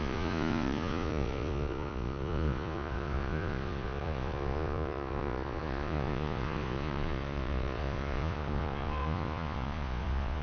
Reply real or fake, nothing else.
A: fake